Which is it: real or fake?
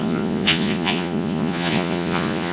fake